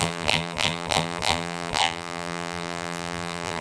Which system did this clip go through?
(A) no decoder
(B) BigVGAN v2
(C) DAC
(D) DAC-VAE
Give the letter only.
B